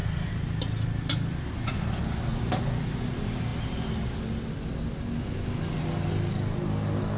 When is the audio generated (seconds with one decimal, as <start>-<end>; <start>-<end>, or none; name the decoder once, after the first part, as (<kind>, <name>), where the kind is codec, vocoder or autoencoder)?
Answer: 2.3-2.8 (vocoder, BigVGAN v2)

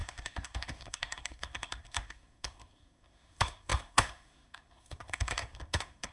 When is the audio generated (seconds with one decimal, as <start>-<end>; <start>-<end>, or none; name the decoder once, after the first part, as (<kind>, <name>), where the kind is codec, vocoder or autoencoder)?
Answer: 0.0-6.1 (codec, SNAC)

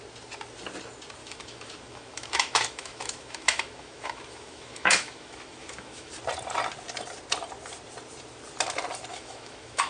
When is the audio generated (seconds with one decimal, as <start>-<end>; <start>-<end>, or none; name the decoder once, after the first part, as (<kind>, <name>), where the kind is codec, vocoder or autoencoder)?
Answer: 1.2-6.1 (autoencoder, DAC-VAE); 9.1-9.9

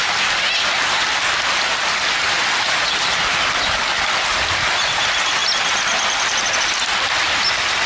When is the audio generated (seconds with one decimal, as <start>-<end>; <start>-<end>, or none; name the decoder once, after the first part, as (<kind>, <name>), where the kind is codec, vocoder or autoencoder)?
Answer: none

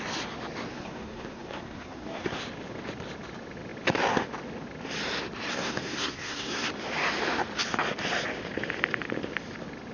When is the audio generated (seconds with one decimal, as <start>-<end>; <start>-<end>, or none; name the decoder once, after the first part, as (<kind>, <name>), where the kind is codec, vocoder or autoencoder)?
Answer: 0.7-2.4 (codec, SNAC); 5.5-6.7